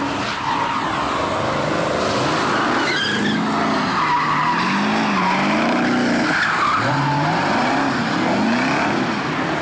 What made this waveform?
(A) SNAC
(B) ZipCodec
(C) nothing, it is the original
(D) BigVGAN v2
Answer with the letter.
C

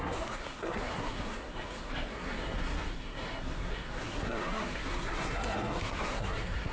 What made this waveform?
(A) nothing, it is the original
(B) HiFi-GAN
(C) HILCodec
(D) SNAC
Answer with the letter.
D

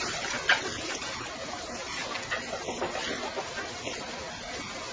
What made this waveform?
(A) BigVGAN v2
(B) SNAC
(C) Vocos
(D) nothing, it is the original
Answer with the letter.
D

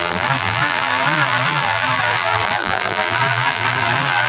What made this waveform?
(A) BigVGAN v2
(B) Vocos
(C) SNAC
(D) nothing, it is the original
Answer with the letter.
A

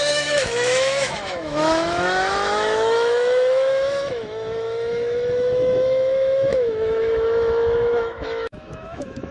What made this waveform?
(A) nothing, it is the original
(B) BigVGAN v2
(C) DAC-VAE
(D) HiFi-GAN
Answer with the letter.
C